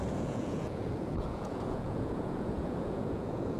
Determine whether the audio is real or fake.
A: fake